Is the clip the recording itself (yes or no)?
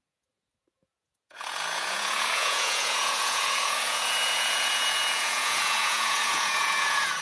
no